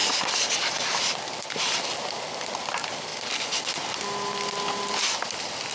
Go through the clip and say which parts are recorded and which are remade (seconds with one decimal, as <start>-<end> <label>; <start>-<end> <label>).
0.0-0.5 remade; 0.5-5.7 recorded